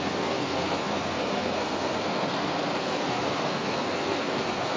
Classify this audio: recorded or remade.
remade